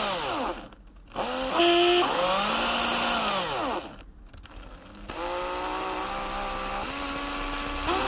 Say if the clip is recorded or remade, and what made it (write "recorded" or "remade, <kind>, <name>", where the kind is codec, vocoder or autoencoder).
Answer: recorded